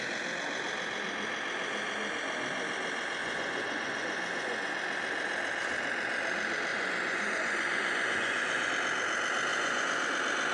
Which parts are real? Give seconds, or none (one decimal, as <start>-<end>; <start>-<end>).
0.0-3.2; 4.7-6.7; 8.7-9.5; 10.1-10.5